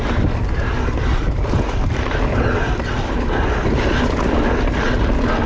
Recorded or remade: recorded